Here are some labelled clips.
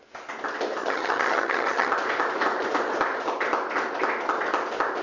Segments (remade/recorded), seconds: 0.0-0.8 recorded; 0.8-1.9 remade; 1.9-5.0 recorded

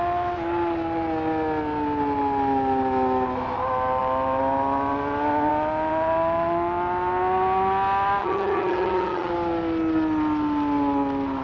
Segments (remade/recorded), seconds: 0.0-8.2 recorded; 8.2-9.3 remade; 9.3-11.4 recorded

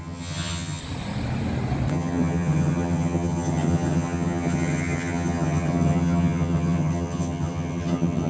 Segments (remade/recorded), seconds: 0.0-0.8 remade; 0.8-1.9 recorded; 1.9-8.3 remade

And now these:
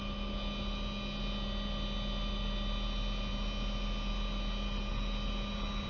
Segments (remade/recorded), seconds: 0.0-5.9 recorded